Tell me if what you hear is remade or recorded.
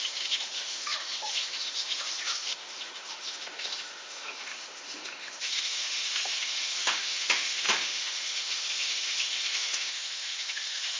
remade